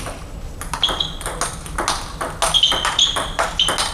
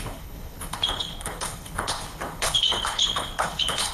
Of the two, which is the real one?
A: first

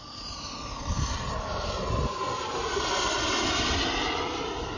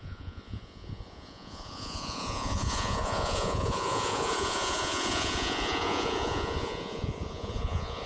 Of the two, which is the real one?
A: first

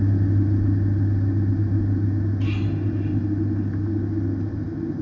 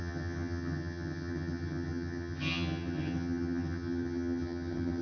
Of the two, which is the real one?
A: first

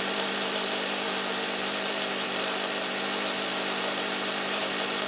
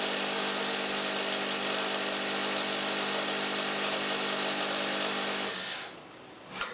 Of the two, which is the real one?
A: second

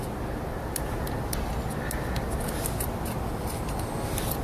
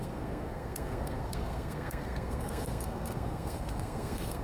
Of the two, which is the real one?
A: first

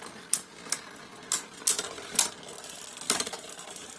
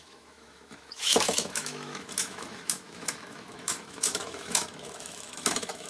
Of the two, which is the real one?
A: first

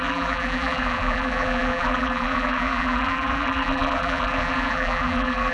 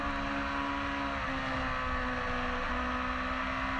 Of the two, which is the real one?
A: second